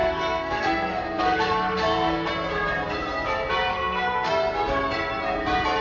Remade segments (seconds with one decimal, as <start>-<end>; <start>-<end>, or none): 0.0-2.3; 3.7-4.3